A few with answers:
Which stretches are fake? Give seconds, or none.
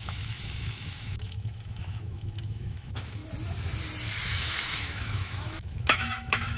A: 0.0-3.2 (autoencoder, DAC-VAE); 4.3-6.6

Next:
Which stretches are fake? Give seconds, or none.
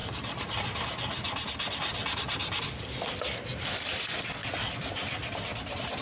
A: 0.0-0.8 (vocoder, BigVGAN v2)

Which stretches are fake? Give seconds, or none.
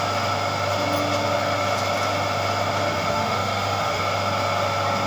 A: 2.9-4.0 (autoencoder, DAC-VAE)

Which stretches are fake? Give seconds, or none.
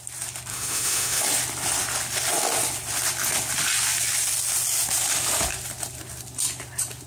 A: 0.5-1.2 (autoencoder, DAC-VAE)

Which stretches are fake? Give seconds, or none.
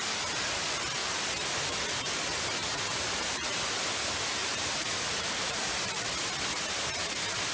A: 1.0-1.8 (vocoder, BigVGAN v2); 2.6-3.9; 4.4-6.1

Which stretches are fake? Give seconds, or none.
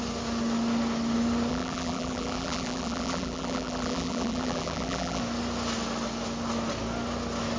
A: 1.5-5.2 (vocoder, BigVGAN v2)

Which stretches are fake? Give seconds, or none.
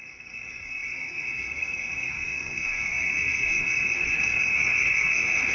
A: 0.0-5.5 (codec, SNAC)